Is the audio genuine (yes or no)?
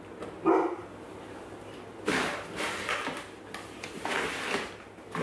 yes